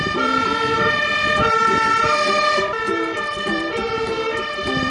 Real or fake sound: fake